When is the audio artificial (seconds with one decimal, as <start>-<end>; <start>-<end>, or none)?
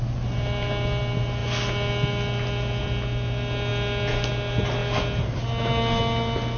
none